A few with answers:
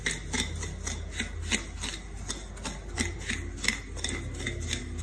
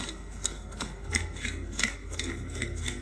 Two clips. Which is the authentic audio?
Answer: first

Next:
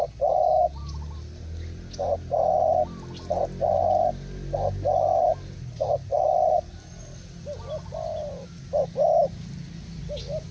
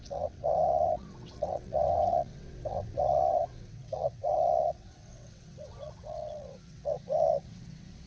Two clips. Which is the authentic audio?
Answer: first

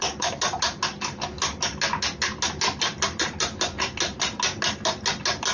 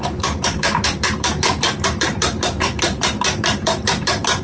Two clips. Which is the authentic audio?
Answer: first